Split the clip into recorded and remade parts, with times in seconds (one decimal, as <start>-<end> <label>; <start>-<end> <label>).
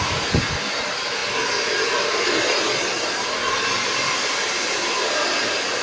0.0-5.8 recorded